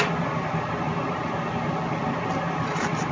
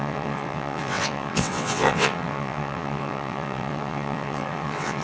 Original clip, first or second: first